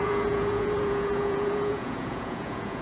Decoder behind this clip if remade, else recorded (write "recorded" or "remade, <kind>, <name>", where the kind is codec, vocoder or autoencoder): remade, vocoder, Vocos